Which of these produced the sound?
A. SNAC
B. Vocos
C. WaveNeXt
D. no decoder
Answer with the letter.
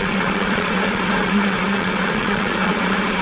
B